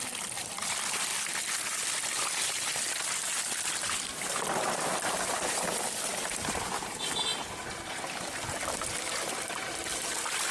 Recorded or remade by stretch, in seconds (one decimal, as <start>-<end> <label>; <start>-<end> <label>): 0.0-1.1 remade; 1.1-4.4 recorded; 4.4-6.1 remade; 6.1-6.7 recorded; 6.7-7.3 remade; 7.3-9.3 recorded; 9.3-10.5 remade